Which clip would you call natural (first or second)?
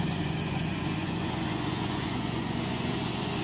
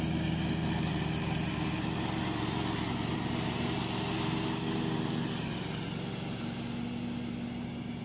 second